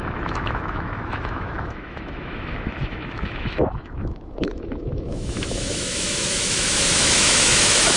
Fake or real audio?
fake